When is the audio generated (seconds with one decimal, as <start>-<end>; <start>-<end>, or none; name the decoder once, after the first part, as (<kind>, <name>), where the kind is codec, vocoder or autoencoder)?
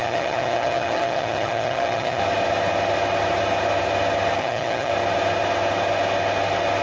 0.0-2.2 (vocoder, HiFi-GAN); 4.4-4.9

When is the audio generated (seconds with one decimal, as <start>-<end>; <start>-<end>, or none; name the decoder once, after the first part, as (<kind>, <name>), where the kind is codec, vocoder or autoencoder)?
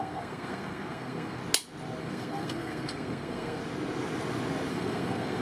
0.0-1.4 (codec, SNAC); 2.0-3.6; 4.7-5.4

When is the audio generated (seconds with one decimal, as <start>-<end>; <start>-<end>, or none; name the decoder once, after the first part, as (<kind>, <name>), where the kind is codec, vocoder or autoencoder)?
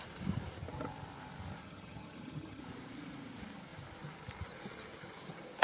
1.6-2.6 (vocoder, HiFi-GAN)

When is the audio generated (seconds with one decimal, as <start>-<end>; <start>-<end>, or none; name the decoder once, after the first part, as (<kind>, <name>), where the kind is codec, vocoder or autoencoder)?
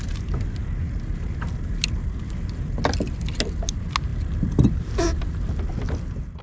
none